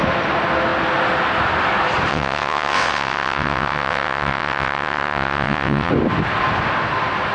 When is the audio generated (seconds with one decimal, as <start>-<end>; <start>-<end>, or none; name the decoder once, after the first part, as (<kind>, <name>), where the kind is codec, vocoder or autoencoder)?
2.1-5.9 (vocoder, WaveNeXt)